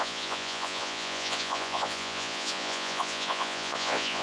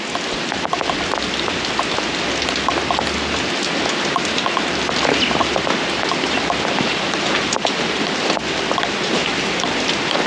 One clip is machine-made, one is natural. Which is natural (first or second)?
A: second